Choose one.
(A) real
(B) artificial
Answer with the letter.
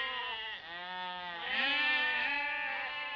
A